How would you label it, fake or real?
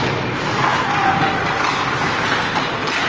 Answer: real